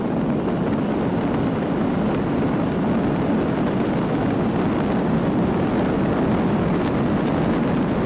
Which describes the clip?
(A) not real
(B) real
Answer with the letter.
B